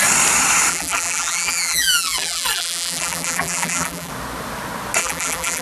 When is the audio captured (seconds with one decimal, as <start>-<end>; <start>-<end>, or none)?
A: 0.0-0.7; 4.1-5.0